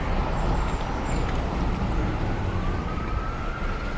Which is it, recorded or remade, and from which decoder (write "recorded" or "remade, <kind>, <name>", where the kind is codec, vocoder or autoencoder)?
recorded